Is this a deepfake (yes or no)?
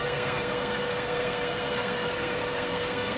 yes